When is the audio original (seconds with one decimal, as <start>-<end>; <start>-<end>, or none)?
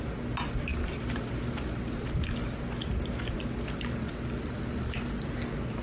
0.0-5.8